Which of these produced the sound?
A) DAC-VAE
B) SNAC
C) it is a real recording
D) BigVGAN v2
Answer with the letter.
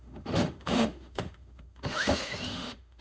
A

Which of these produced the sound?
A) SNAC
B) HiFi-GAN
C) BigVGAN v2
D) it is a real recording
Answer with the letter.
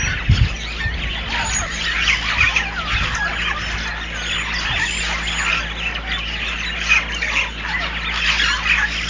D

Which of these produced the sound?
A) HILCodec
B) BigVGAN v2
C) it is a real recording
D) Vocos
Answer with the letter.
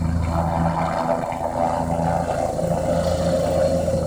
C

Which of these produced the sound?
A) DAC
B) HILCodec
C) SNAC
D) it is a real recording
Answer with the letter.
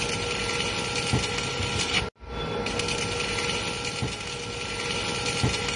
D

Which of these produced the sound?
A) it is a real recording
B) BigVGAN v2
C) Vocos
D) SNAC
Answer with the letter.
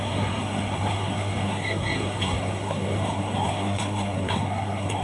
D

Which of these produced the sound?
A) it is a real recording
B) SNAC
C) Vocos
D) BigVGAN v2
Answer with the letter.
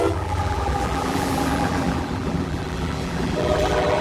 D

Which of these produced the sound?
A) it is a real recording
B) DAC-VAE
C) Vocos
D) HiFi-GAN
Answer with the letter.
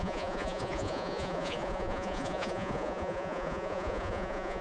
C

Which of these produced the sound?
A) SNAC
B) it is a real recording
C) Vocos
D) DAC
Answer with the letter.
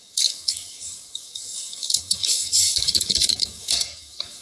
D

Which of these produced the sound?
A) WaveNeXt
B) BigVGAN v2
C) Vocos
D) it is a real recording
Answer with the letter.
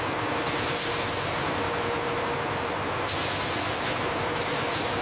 D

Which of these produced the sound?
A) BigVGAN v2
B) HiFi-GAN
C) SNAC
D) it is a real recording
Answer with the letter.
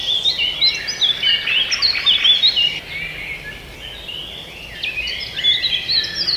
D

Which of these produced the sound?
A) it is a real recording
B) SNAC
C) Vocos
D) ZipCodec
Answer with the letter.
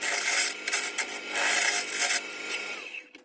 A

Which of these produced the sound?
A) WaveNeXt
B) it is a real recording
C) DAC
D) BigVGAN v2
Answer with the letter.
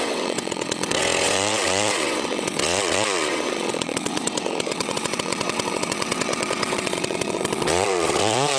A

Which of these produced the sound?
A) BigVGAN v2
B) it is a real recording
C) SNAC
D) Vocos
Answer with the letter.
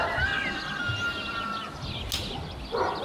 B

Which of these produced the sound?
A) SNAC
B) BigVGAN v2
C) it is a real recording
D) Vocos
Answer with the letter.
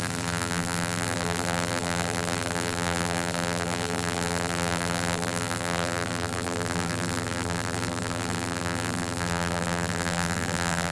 B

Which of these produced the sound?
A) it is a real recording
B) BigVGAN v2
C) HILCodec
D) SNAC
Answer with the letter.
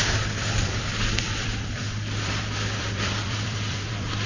B